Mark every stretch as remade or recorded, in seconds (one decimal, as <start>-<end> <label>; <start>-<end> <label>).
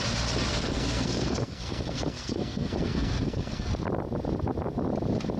0.0-0.5 recorded; 0.5-3.7 remade; 3.7-5.4 recorded